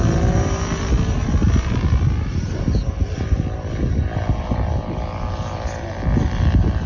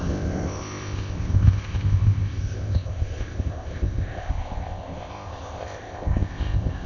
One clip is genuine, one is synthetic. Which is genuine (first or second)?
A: first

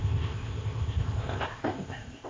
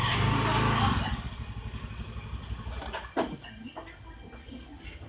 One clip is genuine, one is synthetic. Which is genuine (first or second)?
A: second